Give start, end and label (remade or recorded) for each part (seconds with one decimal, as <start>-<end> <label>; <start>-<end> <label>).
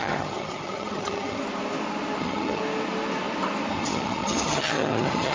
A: 0.0-1.4 remade; 1.4-2.2 recorded; 2.2-2.6 remade; 2.6-3.7 recorded; 3.7-5.3 remade